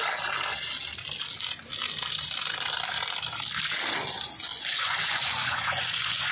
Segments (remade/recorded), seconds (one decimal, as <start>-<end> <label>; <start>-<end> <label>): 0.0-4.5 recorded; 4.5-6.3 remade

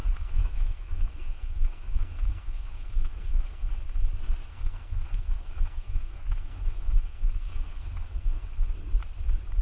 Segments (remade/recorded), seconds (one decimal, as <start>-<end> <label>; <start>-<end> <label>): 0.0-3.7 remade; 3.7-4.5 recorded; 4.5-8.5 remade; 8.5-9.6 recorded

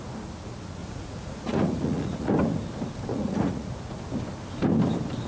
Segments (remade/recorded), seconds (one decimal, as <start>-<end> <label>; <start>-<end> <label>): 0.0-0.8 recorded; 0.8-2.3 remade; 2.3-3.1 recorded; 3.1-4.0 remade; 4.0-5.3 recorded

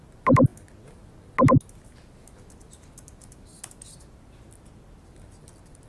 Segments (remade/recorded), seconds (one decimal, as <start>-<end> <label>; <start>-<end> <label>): 0.0-5.9 recorded

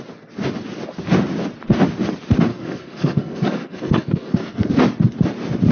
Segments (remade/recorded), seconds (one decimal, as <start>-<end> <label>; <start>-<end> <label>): 0.0-2.5 recorded; 2.5-4.7 remade; 4.7-5.7 recorded

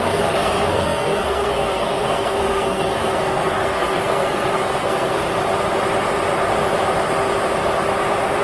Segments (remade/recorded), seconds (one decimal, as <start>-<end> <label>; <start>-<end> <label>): 0.0-5.2 remade; 5.2-8.4 recorded

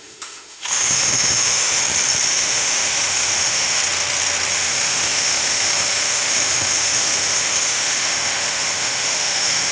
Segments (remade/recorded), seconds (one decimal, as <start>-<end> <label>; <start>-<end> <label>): 0.0-1.8 remade; 1.8-2.3 recorded; 2.3-3.8 remade; 3.8-4.5 recorded; 4.5-9.7 remade